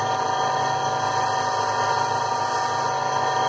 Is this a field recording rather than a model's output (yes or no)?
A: yes